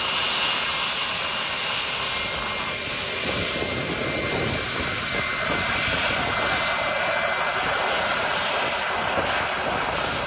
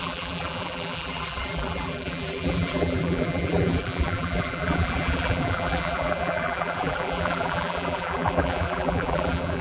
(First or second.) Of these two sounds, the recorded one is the first